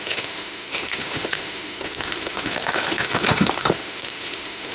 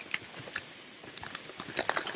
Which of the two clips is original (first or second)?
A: second